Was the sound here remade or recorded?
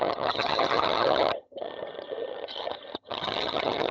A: remade